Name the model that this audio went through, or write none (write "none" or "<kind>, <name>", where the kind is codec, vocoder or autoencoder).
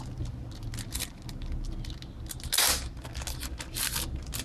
none